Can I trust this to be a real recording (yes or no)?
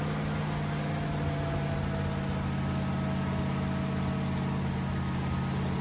yes